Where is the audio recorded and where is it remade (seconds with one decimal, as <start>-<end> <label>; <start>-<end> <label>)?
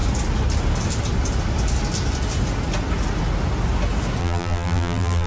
0.0-4.2 recorded; 4.2-5.3 remade